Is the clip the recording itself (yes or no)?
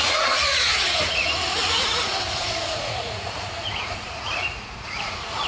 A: no